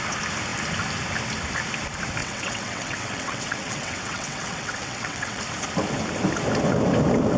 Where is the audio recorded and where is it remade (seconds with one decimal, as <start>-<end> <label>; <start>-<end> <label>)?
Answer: 0.0-2.2 recorded; 2.2-5.4 remade; 5.4-7.4 recorded